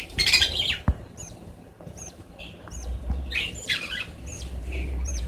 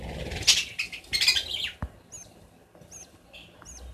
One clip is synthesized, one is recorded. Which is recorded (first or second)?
second